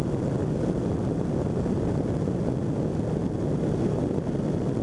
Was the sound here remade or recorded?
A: recorded